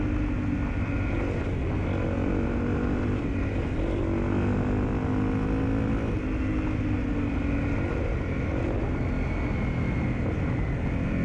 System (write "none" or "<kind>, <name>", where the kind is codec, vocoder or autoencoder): none